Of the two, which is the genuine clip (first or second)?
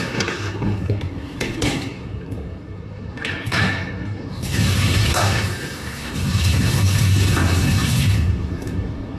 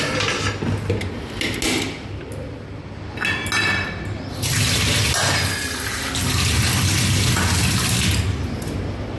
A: second